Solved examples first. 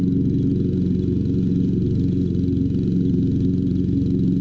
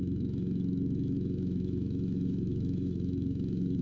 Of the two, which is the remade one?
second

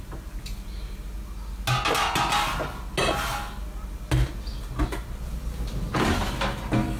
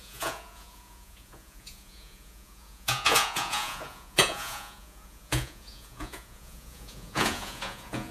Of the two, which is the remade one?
second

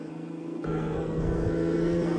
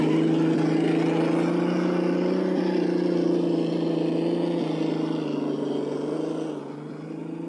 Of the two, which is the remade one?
first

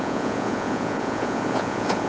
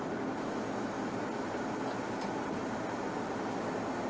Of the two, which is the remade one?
first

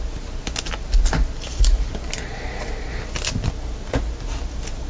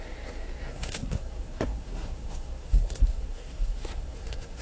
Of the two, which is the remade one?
second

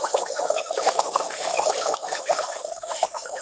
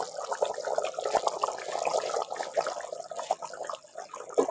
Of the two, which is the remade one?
first